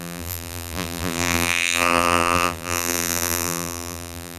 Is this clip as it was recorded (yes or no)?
no